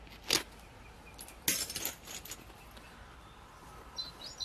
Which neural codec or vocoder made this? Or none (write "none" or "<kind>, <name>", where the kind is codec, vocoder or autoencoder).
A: none